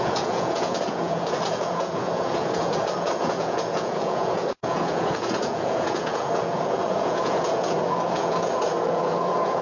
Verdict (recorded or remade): remade